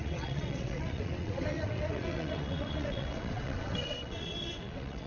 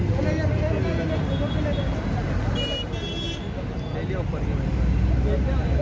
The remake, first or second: first